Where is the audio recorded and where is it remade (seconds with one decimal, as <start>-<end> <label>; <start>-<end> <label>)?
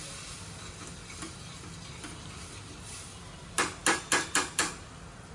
0.0-5.3 recorded